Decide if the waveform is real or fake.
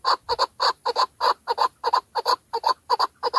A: real